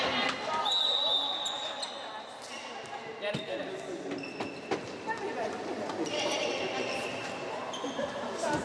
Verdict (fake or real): real